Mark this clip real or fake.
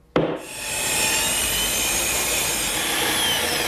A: real